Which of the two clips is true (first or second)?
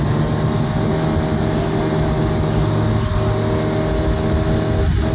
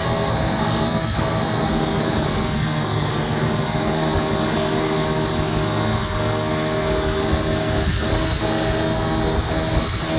first